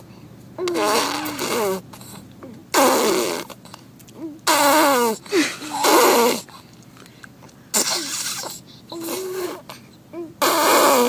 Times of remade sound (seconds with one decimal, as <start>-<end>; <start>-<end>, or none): none